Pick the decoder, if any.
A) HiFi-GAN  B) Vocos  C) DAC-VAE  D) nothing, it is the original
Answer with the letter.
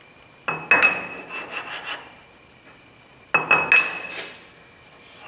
D